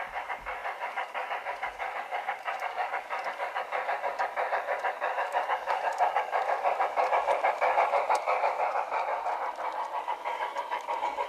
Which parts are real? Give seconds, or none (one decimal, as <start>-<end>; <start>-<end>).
9.1-10.0